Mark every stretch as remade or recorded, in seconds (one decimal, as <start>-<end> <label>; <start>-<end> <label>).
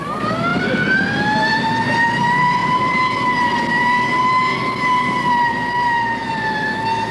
0.0-0.5 remade; 0.5-1.5 recorded; 1.5-7.1 remade